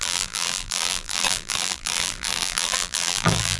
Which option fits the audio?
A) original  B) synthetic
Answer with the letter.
B